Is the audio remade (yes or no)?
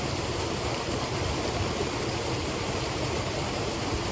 no